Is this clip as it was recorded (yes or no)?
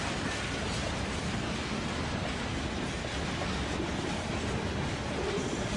yes